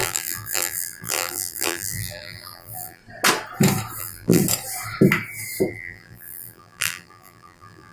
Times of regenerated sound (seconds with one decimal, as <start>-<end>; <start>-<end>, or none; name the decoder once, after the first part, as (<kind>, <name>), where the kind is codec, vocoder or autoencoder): 0.0-3.0 (vocoder, BigVGAN v2); 4.0-4.4; 5.7-7.9